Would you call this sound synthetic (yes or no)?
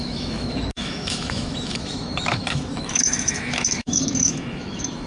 yes